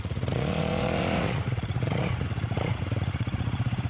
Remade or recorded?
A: remade